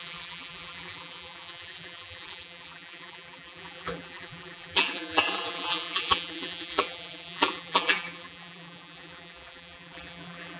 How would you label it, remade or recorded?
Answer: remade